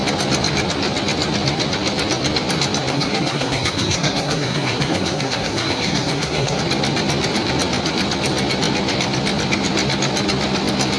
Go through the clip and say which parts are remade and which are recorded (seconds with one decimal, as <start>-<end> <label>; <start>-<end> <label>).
0.0-2.9 recorded; 2.9-6.6 remade; 6.6-11.0 recorded